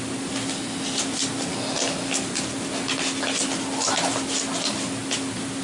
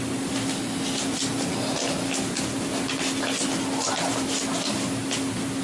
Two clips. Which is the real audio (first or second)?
first